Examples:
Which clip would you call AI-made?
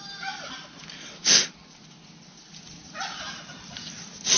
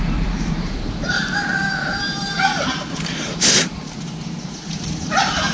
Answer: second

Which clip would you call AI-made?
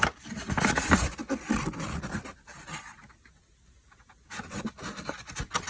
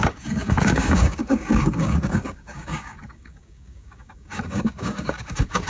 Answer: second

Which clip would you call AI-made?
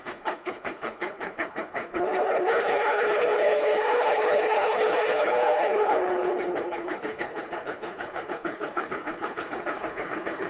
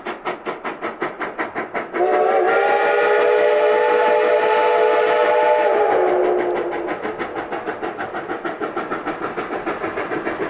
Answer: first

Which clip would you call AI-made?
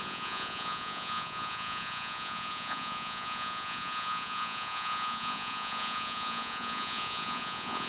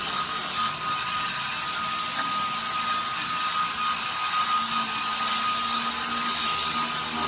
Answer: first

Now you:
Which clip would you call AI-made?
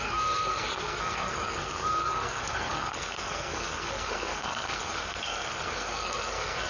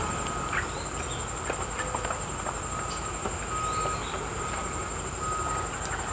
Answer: first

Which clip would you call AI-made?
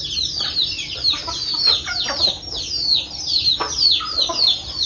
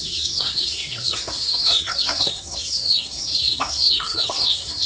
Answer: second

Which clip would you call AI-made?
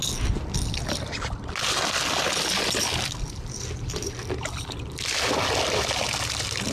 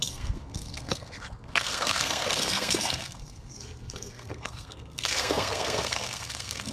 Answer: second